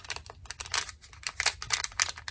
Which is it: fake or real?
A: real